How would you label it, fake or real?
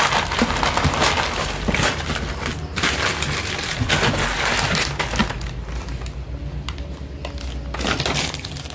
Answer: real